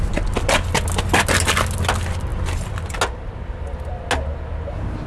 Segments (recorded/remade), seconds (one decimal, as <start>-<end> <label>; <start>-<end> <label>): 0.0-5.1 recorded

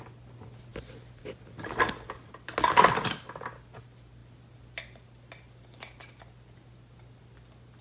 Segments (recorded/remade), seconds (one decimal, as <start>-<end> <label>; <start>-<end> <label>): 0.0-7.8 recorded

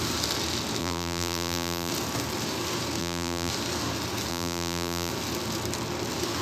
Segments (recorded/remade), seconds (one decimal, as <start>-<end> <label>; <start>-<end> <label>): 0.0-0.8 recorded; 0.8-1.9 remade; 1.9-3.0 recorded; 3.0-3.5 remade; 3.5-4.3 recorded; 4.3-5.1 remade; 5.1-6.4 recorded

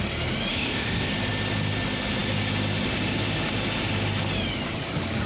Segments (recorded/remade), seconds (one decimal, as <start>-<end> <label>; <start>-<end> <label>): 0.0-0.5 recorded; 0.5-1.1 remade; 1.1-5.3 recorded